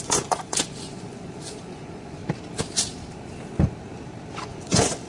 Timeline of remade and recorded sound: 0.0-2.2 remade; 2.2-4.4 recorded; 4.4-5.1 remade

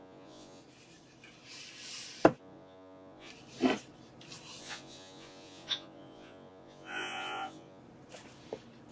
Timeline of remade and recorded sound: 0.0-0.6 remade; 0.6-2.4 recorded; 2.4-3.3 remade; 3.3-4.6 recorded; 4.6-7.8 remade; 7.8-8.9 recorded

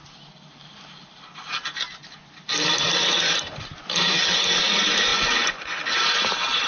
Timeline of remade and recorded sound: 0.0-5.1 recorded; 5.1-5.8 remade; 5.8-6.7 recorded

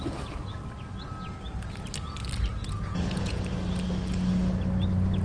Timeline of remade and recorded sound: 0.0-2.5 recorded; 2.5-3.4 remade; 3.4-5.2 recorded

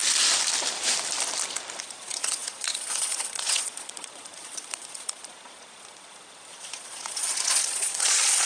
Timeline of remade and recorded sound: 0.0-1.8 recorded; 1.8-8.5 remade